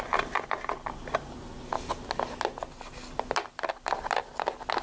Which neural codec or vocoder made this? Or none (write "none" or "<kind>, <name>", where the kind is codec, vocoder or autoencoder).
none